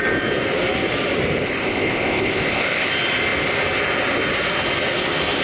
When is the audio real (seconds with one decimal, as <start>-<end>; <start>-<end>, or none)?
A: 0.0-1.5; 2.9-5.4